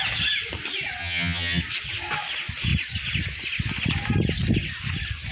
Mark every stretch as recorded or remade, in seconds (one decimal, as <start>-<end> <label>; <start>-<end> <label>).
0.0-1.0 recorded; 1.0-1.6 remade; 1.6-5.3 recorded